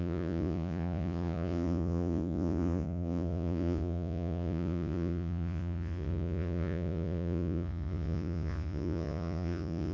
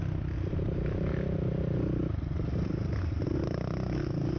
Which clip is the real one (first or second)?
second